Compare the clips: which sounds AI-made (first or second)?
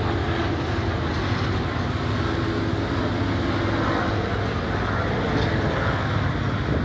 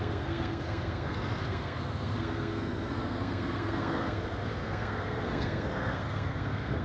second